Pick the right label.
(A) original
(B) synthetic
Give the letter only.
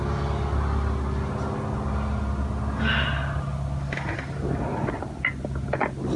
A